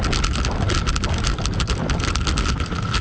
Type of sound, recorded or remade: recorded